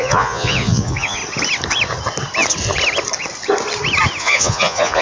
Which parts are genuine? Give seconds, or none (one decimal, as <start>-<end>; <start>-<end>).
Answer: 1.2-4.2